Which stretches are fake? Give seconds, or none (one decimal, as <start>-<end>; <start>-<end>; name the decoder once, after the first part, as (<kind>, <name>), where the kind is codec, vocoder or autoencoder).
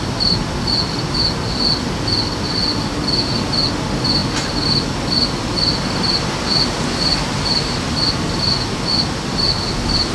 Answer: none